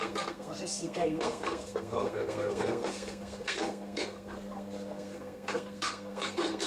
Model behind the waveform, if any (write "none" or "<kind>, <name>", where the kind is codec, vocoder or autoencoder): codec, SNAC